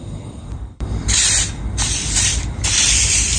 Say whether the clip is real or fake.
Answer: fake